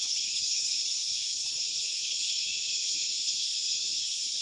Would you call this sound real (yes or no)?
no